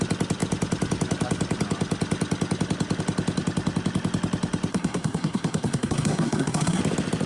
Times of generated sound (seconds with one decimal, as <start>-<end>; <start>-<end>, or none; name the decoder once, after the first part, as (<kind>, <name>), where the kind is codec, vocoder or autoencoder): 4.7-6.8 (codec, SNAC)